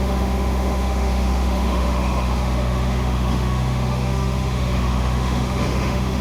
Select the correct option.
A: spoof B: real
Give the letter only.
A